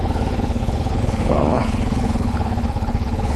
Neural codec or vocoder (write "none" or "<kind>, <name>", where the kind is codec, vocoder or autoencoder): codec, HILCodec